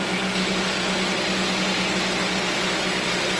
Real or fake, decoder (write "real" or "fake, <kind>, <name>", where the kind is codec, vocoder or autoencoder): real